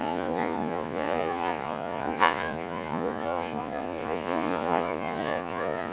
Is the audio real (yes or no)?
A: no